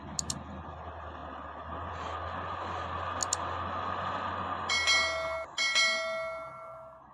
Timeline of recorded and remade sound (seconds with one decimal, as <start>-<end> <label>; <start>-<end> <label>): 0.0-7.1 recorded